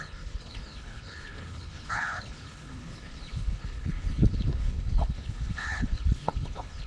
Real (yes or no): no